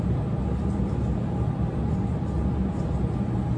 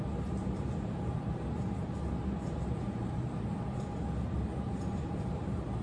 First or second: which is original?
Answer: first